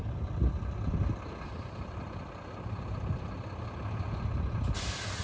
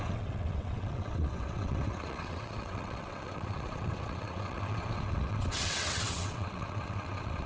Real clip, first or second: first